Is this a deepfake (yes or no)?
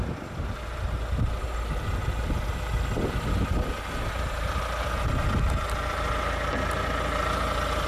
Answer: no